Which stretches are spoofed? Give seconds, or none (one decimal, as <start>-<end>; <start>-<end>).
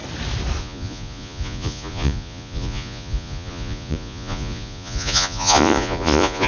0.6-6.5